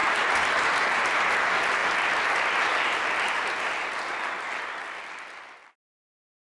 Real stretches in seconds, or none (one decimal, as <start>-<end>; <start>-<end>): 1.3-6.5